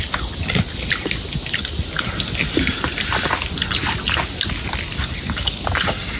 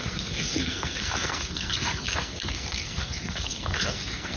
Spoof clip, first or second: second